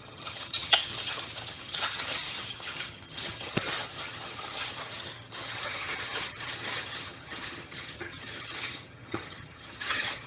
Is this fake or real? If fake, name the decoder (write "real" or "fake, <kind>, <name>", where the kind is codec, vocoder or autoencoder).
fake, vocoder, HiFi-GAN